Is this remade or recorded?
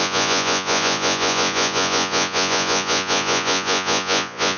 remade